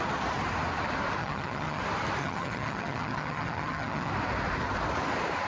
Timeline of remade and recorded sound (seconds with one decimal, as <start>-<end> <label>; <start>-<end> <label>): 0.0-1.2 recorded; 1.2-1.8 remade; 1.8-2.2 recorded; 2.2-4.1 remade; 4.1-5.5 recorded